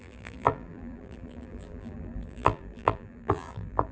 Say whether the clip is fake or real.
fake